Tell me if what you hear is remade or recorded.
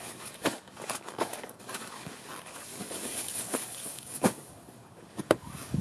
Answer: remade